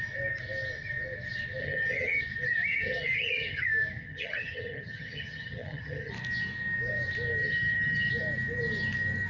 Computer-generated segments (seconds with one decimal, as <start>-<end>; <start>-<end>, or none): 1.6-2.2; 2.7-3.6; 4.0-6.1; 7.4-8.1